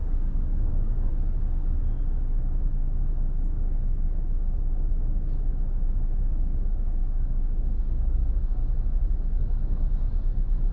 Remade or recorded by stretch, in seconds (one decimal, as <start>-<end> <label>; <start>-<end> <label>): 0.0-1.1 remade; 1.1-6.2 recorded; 6.2-8.6 remade; 8.6-9.2 recorded; 9.2-10.7 remade